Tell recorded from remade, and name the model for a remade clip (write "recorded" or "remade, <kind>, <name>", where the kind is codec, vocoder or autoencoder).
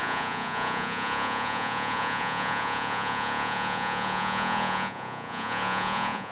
remade, vocoder, Vocos